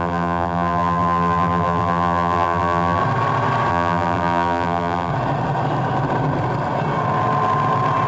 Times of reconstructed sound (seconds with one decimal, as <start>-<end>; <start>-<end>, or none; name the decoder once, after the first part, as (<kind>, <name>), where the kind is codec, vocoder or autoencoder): 0.0-3.0 (vocoder, BigVGAN v2); 3.7-5.1